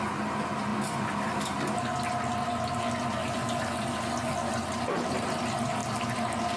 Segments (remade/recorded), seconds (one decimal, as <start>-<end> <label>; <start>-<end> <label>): 0.0-6.6 recorded